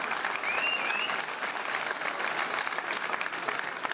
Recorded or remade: recorded